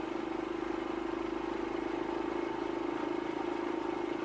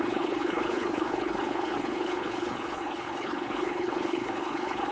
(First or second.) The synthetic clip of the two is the second